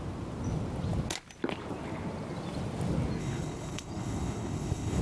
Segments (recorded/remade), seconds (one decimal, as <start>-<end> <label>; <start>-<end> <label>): 0.0-3.2 recorded; 3.2-5.0 remade